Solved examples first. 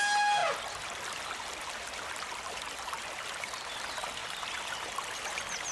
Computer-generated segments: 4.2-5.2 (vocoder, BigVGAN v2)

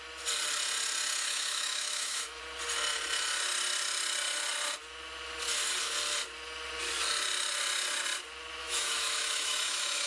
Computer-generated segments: 1.2-2.4 (autoencoder, DAC-VAE); 8.6-10.1

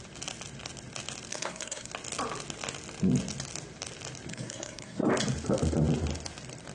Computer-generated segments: 1.3-1.9 (codec, SNAC); 4.3-5.1

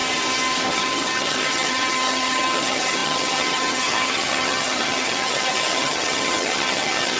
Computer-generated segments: 0.7-7.2 (vocoder, HiFi-GAN)

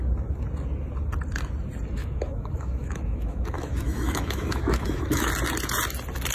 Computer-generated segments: 2.0-5.3 (autoencoder, DAC-VAE)

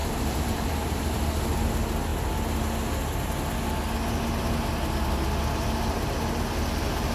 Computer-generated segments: 0.0-0.7 (vocoder, BigVGAN v2)

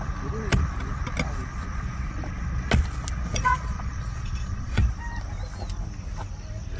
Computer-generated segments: 3.3-4.9 (vocoder, Vocos)

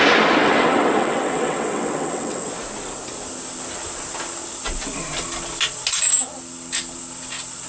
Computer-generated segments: 0.4-2.5 (vocoder, WaveNeXt)